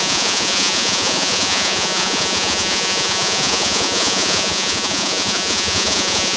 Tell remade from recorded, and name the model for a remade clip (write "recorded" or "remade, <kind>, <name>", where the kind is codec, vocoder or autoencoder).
remade, vocoder, Vocos